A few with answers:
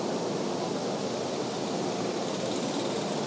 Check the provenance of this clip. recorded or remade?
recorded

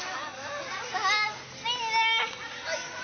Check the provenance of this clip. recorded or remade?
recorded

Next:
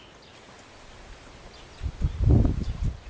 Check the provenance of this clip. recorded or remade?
recorded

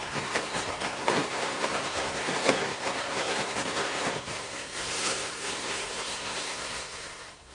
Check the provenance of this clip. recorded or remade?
remade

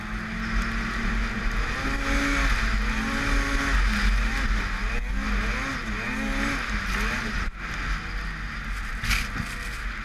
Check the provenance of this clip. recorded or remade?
recorded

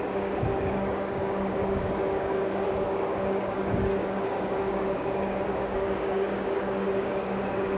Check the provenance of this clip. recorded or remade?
remade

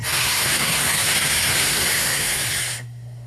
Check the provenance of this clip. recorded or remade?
remade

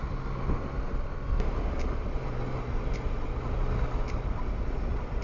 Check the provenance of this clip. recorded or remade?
recorded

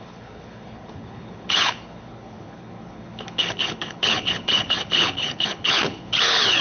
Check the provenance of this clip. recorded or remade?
remade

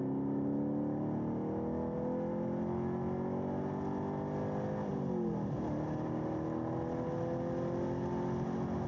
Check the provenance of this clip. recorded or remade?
recorded